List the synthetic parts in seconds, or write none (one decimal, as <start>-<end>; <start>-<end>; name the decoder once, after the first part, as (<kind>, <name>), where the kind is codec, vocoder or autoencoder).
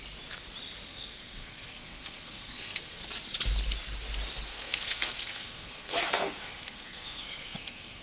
0.9-3.1 (codec, SNAC); 4.5-8.0